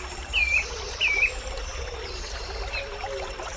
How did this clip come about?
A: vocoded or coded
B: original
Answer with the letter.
B